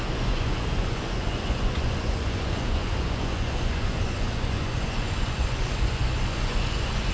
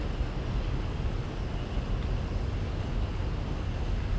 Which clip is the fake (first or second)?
first